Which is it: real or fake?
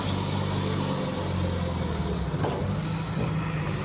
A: real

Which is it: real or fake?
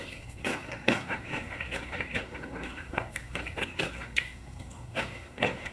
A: fake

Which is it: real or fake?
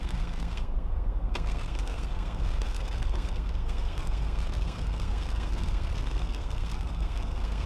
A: fake